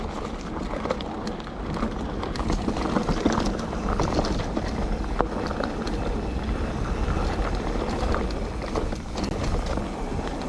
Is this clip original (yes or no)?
yes